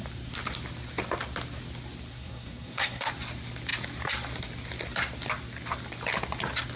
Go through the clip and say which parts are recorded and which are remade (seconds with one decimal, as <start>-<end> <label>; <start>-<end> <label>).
0.0-2.1 recorded; 2.1-3.1 remade; 3.1-6.8 recorded